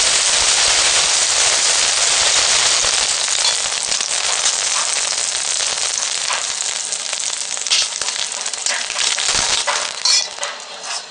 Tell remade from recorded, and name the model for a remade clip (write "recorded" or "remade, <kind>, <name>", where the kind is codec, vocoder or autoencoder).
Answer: recorded